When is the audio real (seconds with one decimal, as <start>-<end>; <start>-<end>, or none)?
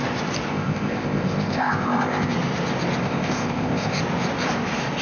0.0-0.5; 2.3-3.0; 4.0-5.0